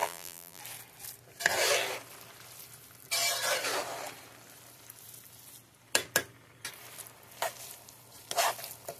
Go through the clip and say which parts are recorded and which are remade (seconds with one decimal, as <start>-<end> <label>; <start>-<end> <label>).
0.0-0.6 remade; 0.6-9.0 recorded